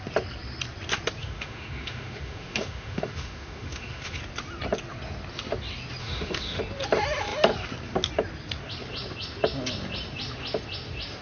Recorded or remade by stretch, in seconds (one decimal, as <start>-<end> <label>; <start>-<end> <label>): 0.0-1.2 recorded; 1.2-4.2 remade; 4.2-6.0 recorded; 6.0-6.6 remade; 6.6-11.2 recorded